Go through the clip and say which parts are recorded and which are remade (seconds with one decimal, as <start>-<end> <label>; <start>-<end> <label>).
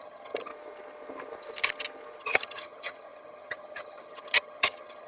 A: 0.0-0.5 remade; 0.5-2.2 recorded; 2.2-5.1 remade